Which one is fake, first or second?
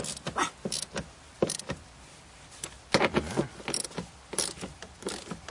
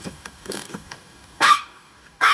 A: second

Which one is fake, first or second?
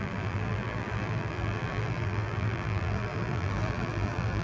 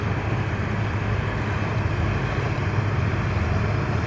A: first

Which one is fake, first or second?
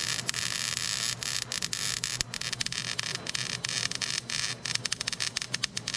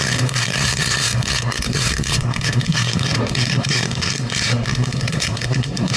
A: second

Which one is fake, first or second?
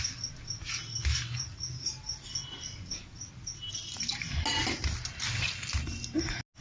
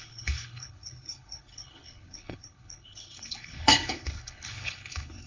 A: second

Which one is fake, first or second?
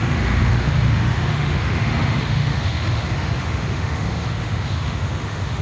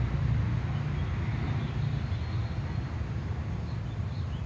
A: first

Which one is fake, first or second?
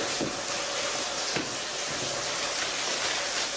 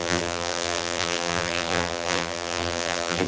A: second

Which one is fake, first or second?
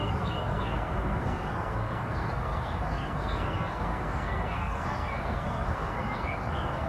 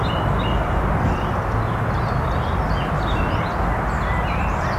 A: first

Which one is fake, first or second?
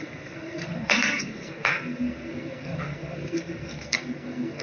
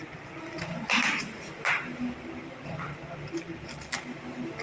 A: first